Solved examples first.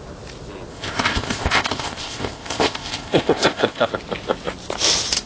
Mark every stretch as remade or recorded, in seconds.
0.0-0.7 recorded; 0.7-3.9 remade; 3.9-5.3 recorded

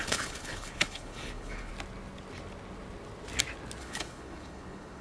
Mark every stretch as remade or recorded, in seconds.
0.0-1.7 remade; 1.7-3.8 recorded; 3.8-5.0 remade

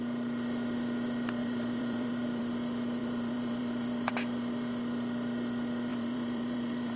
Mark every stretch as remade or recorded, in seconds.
0.0-1.4 recorded; 1.4-2.4 remade; 2.4-3.0 recorded; 3.0-4.1 remade; 4.1-5.9 recorded; 5.9-7.0 remade

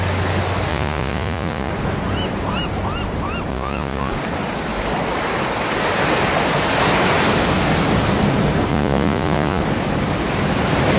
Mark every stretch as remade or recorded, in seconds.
0.0-0.7 recorded; 0.7-1.7 remade; 1.7-3.5 recorded; 3.5-4.1 remade; 4.1-8.7 recorded; 8.7-9.6 remade; 9.6-11.0 recorded

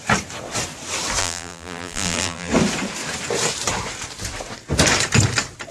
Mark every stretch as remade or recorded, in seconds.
0.0-1.2 recorded; 1.2-2.5 remade; 2.5-5.7 recorded

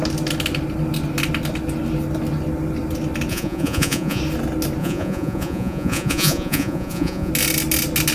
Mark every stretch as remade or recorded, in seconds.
0.0-3.3 recorded; 3.3-4.2 remade; 4.2-4.8 recorded; 4.8-7.3 remade; 7.3-8.1 recorded

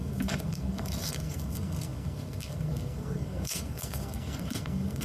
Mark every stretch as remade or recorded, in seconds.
0.0-5.0 remade